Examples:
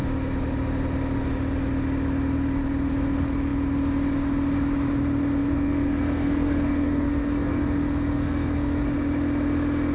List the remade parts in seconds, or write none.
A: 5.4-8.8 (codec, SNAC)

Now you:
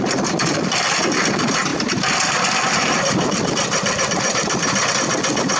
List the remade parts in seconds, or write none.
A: 1.7-4.9 (vocoder, BigVGAN v2)

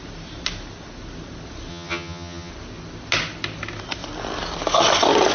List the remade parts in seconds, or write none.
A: 1.7-2.5 (vocoder, HiFi-GAN)

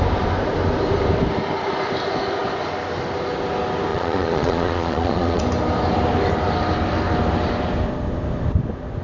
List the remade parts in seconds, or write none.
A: 3.9-5.4 (vocoder, Vocos)

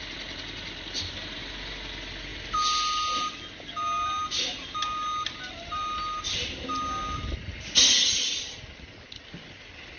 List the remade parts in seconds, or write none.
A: none

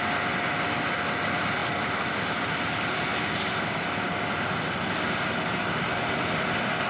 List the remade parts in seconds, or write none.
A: none